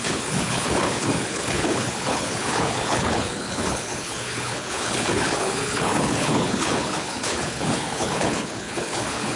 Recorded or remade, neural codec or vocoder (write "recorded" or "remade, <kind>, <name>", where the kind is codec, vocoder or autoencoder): remade, codec, HILCodec